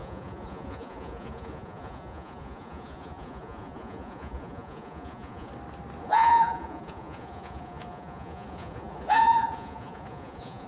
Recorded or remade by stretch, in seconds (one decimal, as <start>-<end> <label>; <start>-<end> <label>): 0.0-5.5 remade; 5.5-6.0 recorded; 6.0-10.7 remade